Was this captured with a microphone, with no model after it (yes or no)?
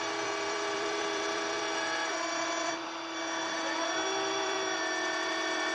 no